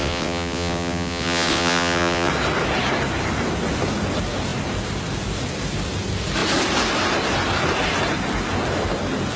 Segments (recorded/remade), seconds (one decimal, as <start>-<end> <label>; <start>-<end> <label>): 0.0-2.3 remade; 2.3-9.4 recorded